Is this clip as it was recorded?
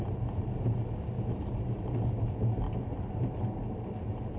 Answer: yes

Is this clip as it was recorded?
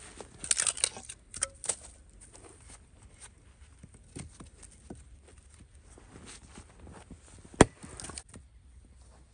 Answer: yes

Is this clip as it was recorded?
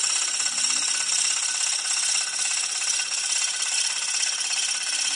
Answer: yes